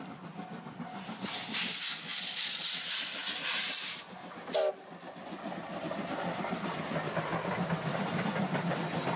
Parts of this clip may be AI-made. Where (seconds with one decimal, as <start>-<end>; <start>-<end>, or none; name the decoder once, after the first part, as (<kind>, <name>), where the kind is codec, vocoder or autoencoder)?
2.1-2.6 (vocoder, Vocos)